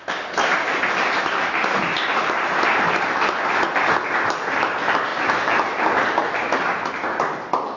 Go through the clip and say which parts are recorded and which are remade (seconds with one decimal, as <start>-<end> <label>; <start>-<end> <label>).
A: 0.0-7.8 recorded